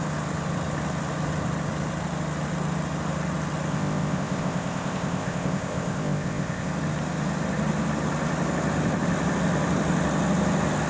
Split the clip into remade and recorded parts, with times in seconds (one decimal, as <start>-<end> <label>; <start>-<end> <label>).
0.0-3.7 recorded; 3.7-6.7 remade; 6.7-10.9 recorded